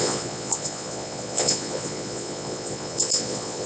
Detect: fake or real fake